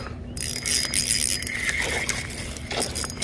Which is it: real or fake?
real